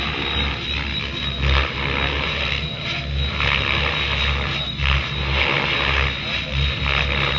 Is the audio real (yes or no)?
yes